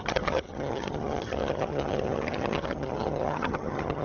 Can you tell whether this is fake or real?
fake